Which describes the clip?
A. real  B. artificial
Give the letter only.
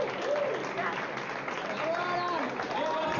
A